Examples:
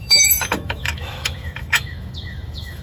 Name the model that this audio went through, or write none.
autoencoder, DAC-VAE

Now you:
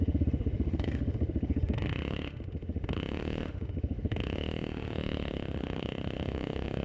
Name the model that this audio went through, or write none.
autoencoder, DAC-VAE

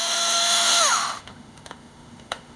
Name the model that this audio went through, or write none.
autoencoder, DAC-VAE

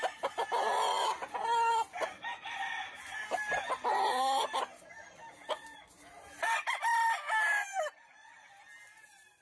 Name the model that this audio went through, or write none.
none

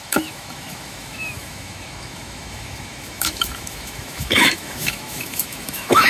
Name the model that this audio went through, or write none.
autoencoder, DAC-VAE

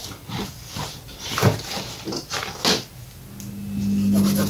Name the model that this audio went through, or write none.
none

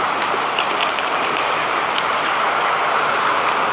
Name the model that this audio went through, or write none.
none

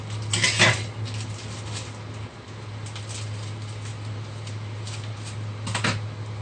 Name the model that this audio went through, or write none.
none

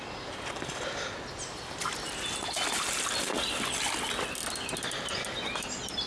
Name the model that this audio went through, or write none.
none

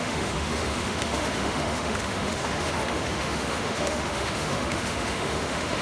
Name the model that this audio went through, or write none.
autoencoder, DAC-VAE